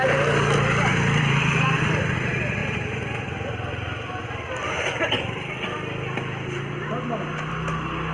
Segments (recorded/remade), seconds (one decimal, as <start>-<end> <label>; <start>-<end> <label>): 0.0-0.9 recorded; 0.9-2.0 remade; 2.0-8.1 recorded